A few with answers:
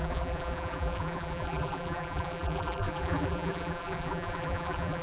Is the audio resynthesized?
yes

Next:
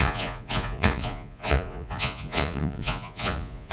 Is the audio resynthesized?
yes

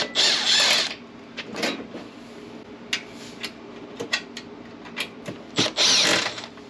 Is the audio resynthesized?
no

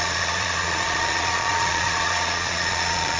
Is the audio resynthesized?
yes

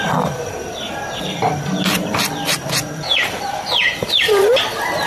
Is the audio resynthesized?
yes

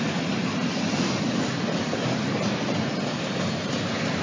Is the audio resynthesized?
no